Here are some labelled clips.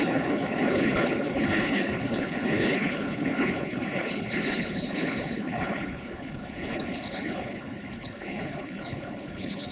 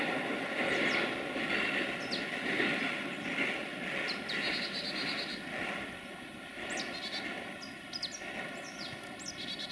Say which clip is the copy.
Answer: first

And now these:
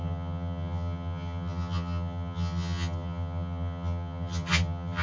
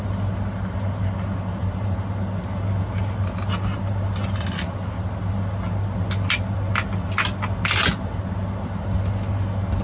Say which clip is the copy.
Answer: first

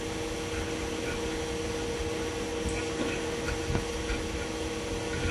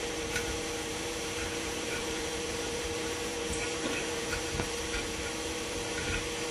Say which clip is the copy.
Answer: second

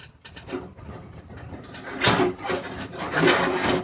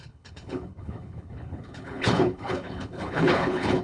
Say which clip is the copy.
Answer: second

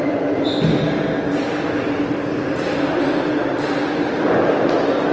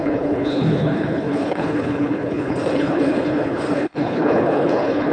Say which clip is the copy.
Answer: second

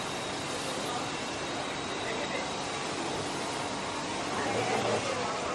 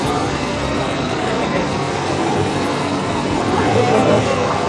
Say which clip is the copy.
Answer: second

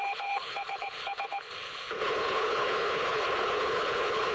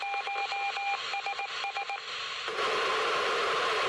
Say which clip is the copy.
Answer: first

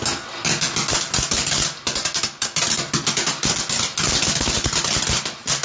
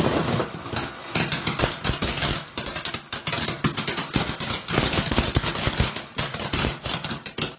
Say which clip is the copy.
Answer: second